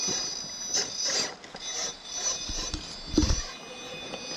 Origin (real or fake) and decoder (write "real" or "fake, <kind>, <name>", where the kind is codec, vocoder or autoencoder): real